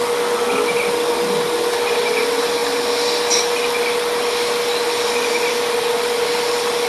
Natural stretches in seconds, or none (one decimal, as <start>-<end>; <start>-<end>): 0.0-6.9

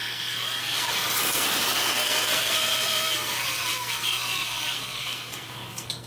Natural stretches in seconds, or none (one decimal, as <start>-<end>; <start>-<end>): none

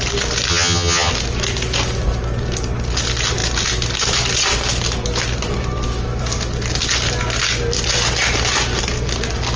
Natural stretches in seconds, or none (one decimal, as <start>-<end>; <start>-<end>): 0.0-0.5; 1.1-9.6

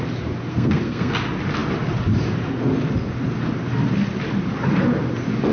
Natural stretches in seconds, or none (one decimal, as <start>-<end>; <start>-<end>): 0.0-0.5; 1.1-5.5

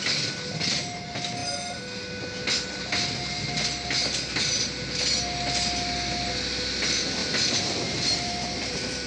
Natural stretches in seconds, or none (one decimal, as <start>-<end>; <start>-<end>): 0.0-7.2

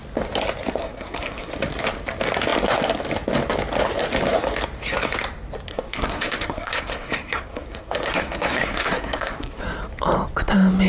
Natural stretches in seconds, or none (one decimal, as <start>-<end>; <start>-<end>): 0.0-0.8; 1.5-5.7; 9.6-10.9

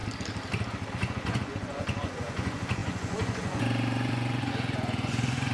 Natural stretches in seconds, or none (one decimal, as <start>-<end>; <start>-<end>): 0.0-0.9

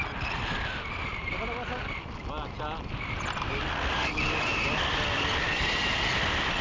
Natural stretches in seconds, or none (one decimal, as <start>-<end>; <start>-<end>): 0.0-6.6